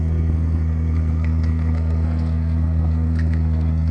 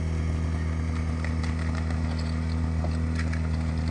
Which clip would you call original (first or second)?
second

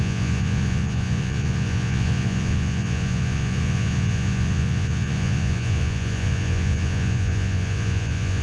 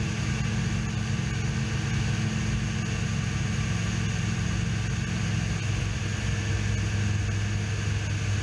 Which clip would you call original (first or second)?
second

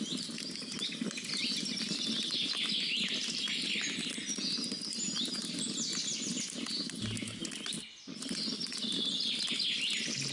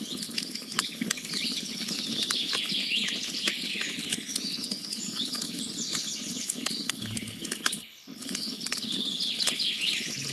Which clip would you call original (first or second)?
first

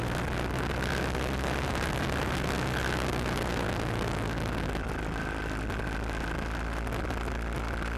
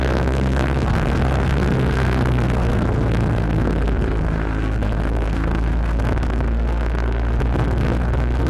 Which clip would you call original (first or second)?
first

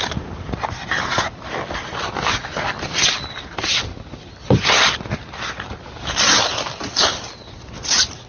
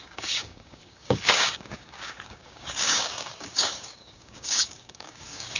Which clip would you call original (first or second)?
first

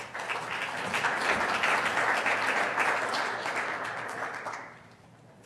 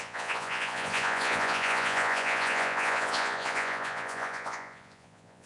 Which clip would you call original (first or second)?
first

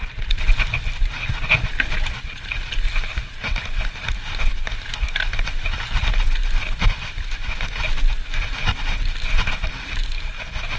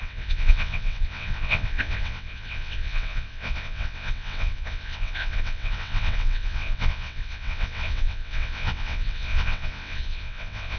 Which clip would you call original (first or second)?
first